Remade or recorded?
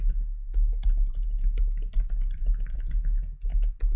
recorded